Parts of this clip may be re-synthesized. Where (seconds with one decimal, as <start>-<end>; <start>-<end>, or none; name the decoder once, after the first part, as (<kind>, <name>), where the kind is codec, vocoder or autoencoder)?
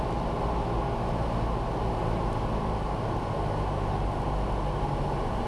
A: none